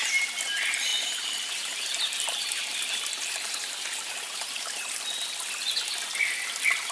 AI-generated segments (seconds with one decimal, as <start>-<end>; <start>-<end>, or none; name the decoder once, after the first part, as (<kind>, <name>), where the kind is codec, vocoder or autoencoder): 0.9-4.9 (vocoder, BigVGAN v2)